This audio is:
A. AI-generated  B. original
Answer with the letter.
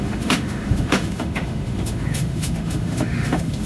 A